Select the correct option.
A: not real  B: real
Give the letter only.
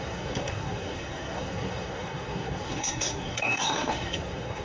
A